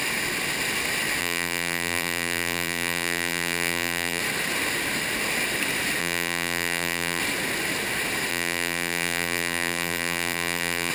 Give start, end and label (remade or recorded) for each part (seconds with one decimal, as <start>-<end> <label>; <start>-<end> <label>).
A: 0.0-1.2 recorded; 1.2-4.2 remade; 4.2-6.0 recorded; 6.0-7.2 remade; 7.2-8.3 recorded; 8.3-10.9 remade